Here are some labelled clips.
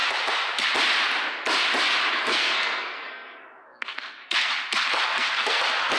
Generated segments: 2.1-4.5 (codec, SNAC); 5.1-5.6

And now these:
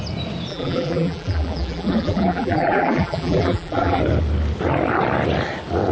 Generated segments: 0.5-4.0 (vocoder, BigVGAN v2)

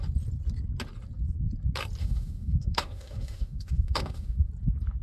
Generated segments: 2.0-4.5 (autoencoder, DAC-VAE)